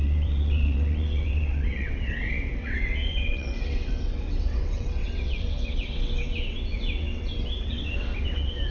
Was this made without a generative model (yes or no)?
no